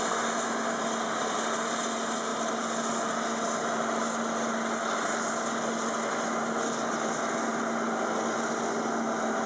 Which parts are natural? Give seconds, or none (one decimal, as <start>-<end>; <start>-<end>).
0.0-9.5